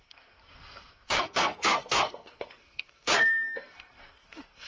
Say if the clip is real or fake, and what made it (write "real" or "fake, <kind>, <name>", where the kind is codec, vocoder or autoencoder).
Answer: fake, codec, SNAC